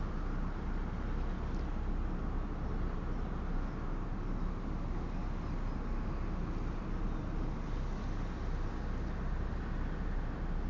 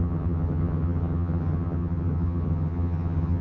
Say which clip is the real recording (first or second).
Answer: first